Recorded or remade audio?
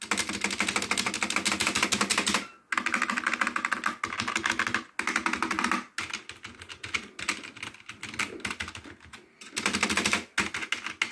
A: recorded